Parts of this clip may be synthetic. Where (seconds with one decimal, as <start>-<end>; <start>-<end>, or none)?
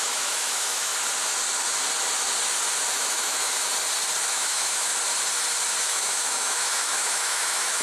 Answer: 0.0-0.9; 2.9-3.7; 4.3-4.9; 5.8-7.8